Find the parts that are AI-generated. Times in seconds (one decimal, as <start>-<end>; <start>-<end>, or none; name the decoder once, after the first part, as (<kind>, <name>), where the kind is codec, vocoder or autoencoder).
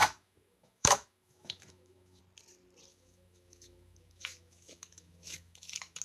0.0-2.2 (autoencoder, DAC-VAE); 2.9-6.0